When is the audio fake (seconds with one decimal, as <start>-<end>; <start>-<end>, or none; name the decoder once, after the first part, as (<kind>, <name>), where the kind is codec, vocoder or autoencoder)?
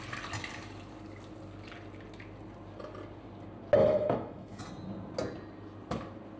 3.8-4.6 (autoencoder, DAC-VAE)